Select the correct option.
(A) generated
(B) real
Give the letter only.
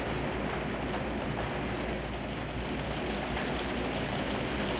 B